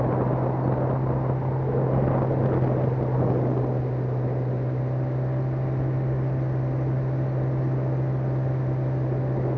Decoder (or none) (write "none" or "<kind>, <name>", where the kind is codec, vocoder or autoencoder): none